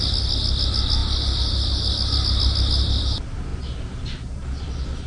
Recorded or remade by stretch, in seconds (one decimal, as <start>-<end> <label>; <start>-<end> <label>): 0.0-5.1 recorded